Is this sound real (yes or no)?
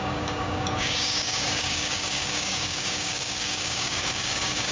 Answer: no